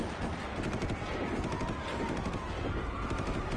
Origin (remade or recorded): recorded